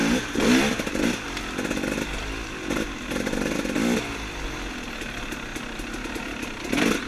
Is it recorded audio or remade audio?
recorded